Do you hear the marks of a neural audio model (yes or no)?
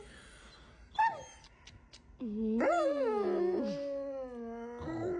no